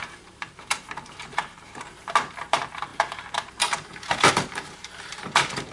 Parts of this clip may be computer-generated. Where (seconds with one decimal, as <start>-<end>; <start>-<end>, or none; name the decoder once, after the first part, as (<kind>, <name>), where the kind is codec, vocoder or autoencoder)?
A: 0.0-5.7 (vocoder, BigVGAN v2)